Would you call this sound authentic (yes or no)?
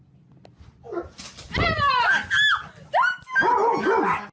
yes